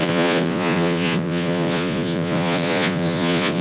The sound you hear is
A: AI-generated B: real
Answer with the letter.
A